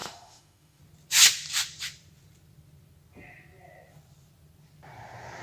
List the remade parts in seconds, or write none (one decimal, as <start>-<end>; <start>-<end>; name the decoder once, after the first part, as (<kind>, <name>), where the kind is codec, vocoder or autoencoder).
0.0-0.8 (autoencoder, DAC-VAE)